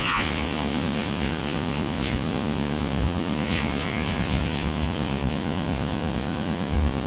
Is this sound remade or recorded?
remade